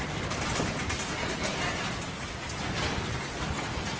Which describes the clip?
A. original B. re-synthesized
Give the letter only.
A